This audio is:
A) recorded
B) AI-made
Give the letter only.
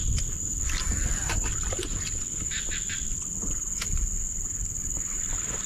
B